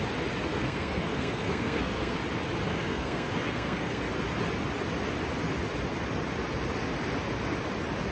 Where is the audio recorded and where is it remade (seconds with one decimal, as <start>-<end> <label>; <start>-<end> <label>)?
0.0-0.5 recorded; 0.5-2.2 remade; 2.2-2.7 recorded; 2.7-4.0 remade; 4.0-8.1 recorded

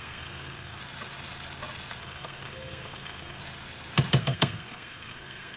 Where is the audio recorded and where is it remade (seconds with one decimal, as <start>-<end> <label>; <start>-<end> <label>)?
0.0-0.8 remade; 0.8-2.0 recorded; 2.0-3.4 remade; 3.4-4.2 recorded; 4.2-5.6 remade

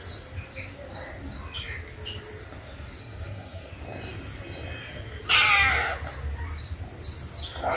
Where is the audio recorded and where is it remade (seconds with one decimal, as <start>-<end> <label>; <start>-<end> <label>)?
0.0-3.0 recorded; 3.0-3.7 remade; 3.7-7.8 recorded